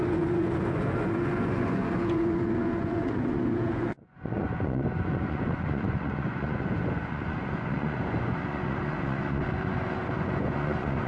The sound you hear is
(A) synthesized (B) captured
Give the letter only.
A